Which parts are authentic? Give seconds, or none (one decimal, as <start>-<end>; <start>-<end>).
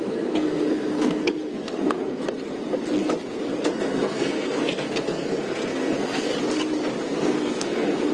2.2-3.6; 6.3-7.0